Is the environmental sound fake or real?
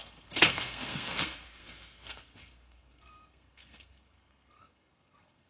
fake